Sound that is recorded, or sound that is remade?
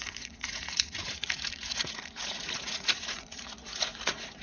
remade